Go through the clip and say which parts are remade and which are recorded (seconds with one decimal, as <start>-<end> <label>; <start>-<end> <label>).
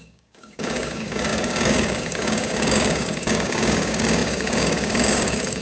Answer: 0.0-5.6 remade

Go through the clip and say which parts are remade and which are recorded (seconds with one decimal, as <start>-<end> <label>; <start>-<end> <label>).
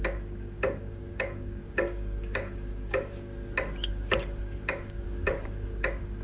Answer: 0.0-3.3 remade; 3.3-3.9 recorded; 3.9-6.2 remade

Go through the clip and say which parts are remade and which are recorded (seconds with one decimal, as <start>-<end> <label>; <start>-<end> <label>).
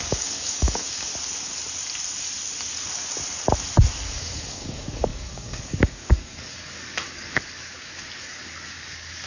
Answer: 0.0-1.1 remade; 1.1-4.1 recorded; 4.1-9.3 remade